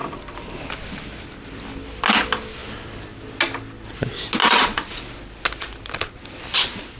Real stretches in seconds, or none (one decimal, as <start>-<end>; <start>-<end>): 0.0-4.4; 5.0-7.0